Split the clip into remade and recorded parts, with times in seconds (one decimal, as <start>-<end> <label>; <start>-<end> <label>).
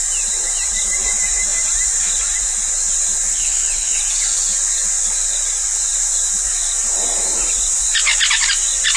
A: 0.0-3.3 recorded; 3.3-4.0 remade; 4.0-9.0 recorded